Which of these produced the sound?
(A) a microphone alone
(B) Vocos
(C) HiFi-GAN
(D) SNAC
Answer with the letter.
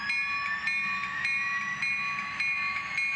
A